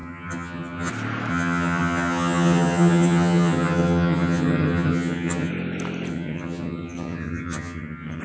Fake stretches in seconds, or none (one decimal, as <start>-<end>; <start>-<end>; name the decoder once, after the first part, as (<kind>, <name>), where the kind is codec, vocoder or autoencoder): 0.0-0.9 (vocoder, HiFi-GAN); 1.3-5.5; 6.1-8.2